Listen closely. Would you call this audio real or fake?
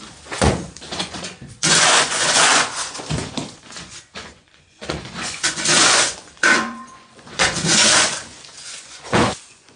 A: fake